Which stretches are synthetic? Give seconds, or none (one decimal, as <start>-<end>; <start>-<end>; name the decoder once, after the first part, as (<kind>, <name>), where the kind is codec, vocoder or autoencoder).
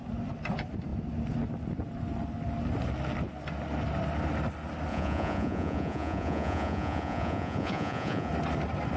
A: 4.9-8.3 (vocoder, Vocos)